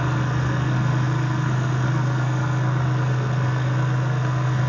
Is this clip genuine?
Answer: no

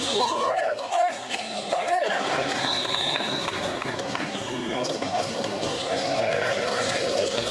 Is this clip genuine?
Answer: no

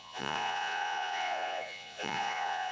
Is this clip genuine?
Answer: no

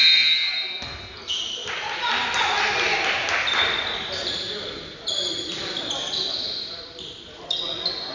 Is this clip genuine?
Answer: yes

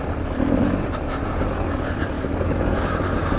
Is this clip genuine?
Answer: yes